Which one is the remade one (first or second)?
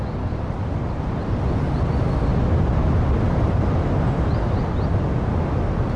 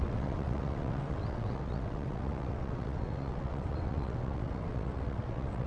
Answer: second